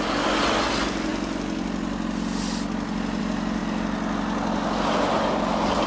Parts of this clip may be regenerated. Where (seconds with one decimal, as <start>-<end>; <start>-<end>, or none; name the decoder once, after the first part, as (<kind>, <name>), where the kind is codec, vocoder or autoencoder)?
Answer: none